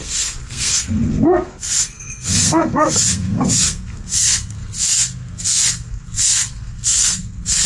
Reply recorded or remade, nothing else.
remade